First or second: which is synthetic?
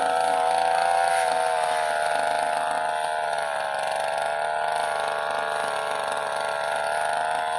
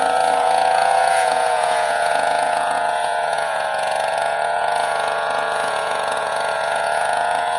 second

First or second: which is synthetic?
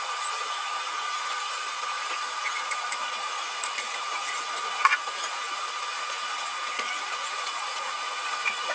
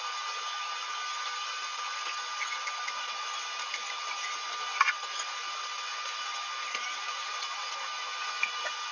first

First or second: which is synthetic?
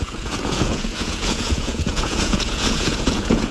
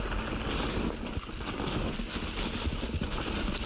first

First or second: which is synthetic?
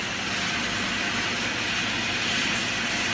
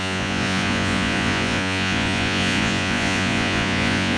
second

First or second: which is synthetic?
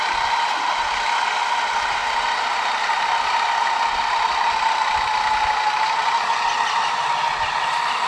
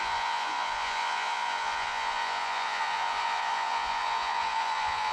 second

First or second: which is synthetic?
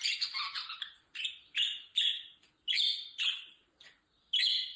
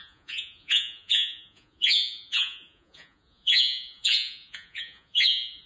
second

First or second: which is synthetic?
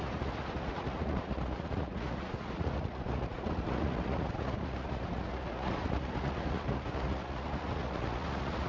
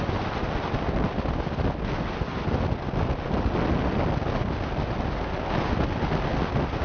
first